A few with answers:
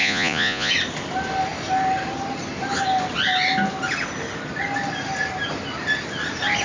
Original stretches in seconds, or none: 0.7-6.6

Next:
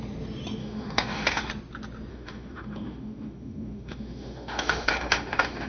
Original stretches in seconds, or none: 0.0-0.6; 1.5-2.1

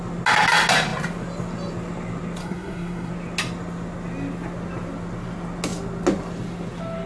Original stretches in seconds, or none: 0.0-2.4; 3.1-7.1

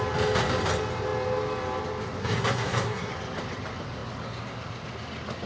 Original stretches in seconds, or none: 0.0-2.2; 3.1-5.5

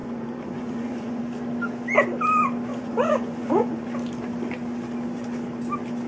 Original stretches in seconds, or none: 1.2-2.7; 3.9-6.1

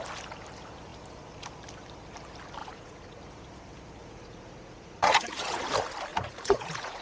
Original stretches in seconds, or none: 0.0-2.6; 3.2-4.0; 5.6-6.1

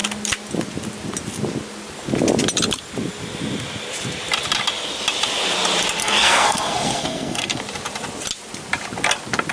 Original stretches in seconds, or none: 0.0-6.0; 7.6-9.5